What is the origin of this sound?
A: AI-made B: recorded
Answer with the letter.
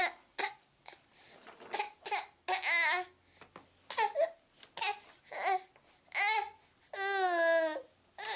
B